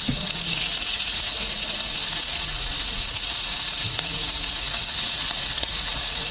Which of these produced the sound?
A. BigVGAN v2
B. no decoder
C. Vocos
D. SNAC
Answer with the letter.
C